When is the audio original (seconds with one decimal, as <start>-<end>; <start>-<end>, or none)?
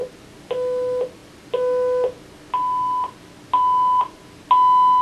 0.0-5.0